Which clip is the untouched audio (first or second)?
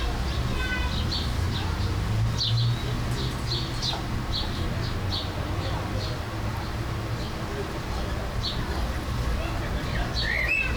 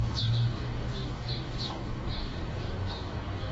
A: first